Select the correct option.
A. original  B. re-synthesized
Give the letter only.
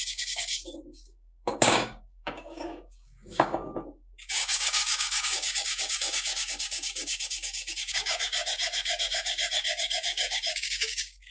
B